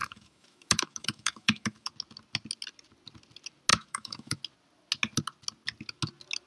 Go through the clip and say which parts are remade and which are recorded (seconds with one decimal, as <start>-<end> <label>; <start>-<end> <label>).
0.0-1.9 remade; 1.9-3.7 recorded; 3.7-4.4 remade; 4.4-6.5 recorded